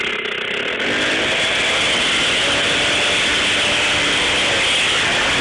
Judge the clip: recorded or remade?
recorded